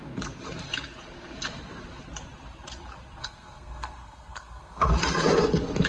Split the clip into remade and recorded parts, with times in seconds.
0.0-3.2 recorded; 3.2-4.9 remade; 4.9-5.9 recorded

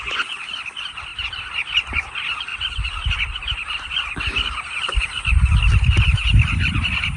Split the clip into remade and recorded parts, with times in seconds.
0.0-7.2 recorded

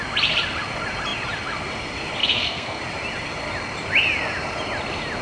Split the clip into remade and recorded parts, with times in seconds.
0.0-2.2 recorded; 2.2-2.8 remade; 2.8-5.2 recorded

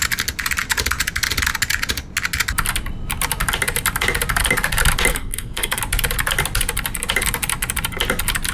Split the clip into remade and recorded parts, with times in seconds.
0.0-5.1 recorded; 5.1-5.8 remade; 5.8-8.5 recorded

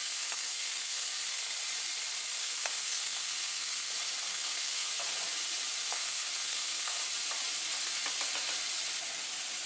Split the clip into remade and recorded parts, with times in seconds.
0.0-1.4 remade; 1.4-2.4 recorded; 2.4-3.9 remade; 3.9-4.3 recorded; 4.3-4.9 remade; 4.9-5.8 recorded; 5.8-7.0 remade; 7.0-9.7 recorded